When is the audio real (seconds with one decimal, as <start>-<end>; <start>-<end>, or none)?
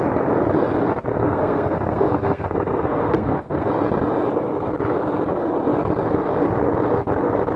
0.0-1.1; 3.7-7.6